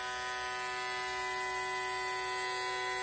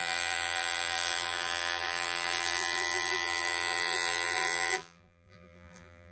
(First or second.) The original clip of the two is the first